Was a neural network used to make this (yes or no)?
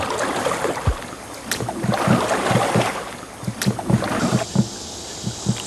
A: no